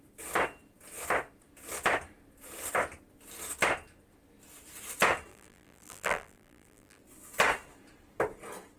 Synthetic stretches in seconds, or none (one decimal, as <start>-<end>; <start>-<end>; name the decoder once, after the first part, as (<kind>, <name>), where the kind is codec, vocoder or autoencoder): 5.3-7.0 (vocoder, BigVGAN v2)